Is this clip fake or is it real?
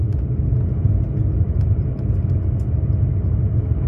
real